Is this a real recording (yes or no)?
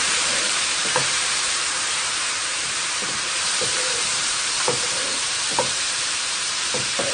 no